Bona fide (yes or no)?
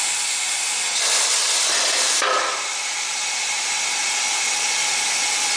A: yes